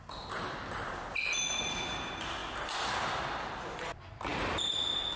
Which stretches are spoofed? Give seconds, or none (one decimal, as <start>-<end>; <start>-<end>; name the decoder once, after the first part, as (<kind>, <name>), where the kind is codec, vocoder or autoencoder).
none